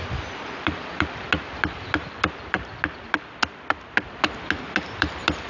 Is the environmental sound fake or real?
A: real